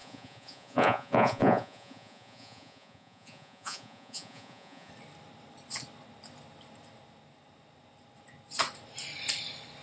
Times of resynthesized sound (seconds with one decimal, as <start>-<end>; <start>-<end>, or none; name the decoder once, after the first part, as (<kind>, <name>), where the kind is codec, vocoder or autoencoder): 0.0-4.9 (vocoder, Vocos)